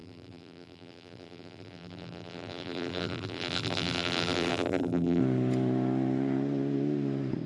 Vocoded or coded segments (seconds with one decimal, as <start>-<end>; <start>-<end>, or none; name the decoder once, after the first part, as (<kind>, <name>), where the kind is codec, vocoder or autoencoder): 0.0-5.2 (vocoder, BigVGAN v2)